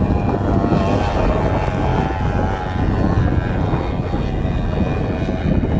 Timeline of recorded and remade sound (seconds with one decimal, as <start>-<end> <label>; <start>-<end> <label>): 0.0-5.8 recorded